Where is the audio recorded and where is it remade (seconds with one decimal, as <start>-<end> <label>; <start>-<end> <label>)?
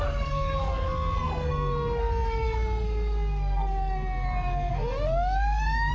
0.0-5.9 remade